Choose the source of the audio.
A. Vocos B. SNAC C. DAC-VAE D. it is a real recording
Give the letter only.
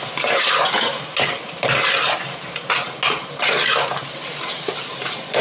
D